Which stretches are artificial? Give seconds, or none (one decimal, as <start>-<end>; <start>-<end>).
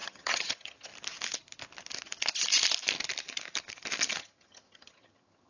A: 0.0-0.9; 4.2-5.5